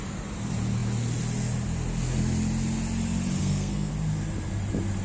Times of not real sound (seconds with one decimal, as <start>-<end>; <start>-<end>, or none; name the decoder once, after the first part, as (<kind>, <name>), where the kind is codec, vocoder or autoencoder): 3.4-3.9 (codec, SNAC)